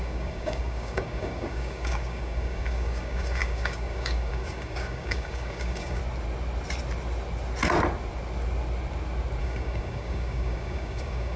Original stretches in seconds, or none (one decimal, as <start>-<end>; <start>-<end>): 6.0-9.4